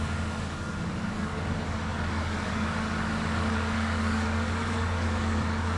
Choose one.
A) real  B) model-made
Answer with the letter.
B